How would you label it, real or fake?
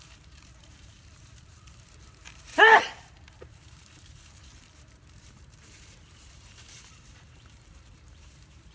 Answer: fake